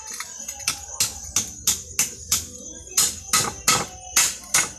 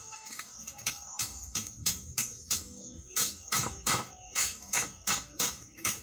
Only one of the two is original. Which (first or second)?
first